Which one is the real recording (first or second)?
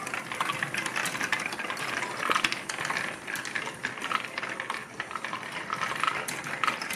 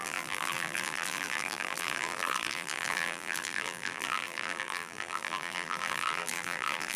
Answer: first